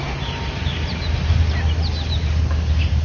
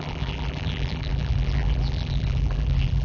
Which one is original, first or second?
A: first